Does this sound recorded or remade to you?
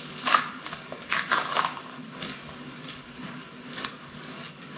remade